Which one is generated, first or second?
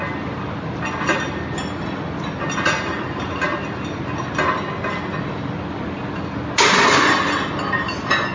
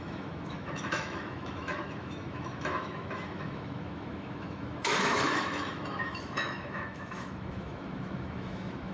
second